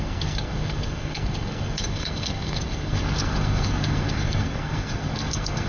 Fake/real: fake